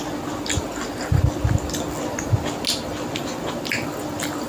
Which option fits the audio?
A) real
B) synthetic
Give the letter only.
A